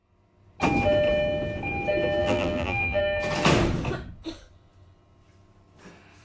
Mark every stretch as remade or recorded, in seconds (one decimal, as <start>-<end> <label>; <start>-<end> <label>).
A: 0.0-2.2 recorded; 2.2-3.0 remade; 3.0-6.2 recorded